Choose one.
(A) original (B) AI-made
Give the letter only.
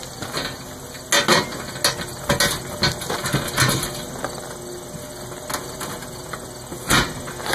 A